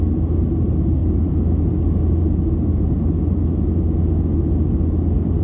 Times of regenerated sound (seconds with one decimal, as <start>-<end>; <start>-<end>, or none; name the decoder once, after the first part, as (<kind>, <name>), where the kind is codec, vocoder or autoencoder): none

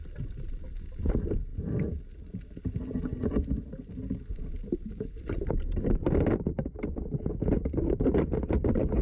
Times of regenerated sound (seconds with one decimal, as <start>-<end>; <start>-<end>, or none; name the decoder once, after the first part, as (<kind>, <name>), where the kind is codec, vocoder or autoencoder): 4.3-5.8 (vocoder, BigVGAN v2)

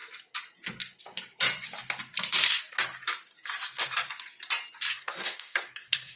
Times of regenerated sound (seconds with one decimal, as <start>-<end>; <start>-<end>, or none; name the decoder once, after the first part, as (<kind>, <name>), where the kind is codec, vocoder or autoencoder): 4.9-6.2 (codec, SNAC)